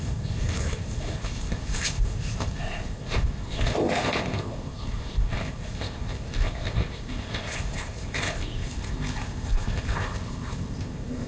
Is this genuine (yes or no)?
no